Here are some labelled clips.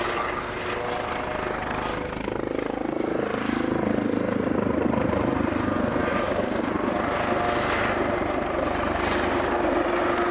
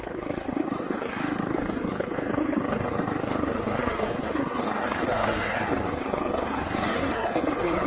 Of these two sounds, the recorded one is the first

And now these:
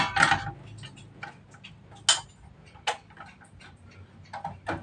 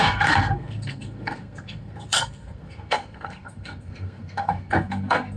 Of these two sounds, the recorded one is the first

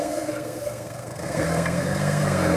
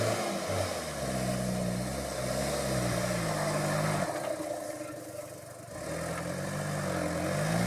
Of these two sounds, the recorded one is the second